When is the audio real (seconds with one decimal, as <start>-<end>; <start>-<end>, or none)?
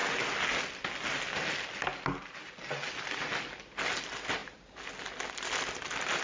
0.0-6.2